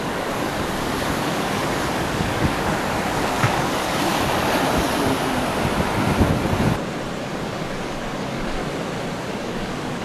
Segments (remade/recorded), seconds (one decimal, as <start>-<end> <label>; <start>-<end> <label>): 0.0-4.1 remade; 4.1-7.2 recorded; 7.2-8.6 remade; 8.6-9.2 recorded; 9.2-10.0 remade